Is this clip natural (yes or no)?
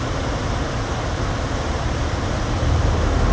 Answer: yes